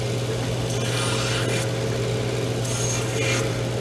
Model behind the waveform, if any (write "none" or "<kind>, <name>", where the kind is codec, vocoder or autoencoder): none